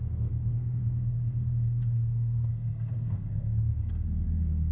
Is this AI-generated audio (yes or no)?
yes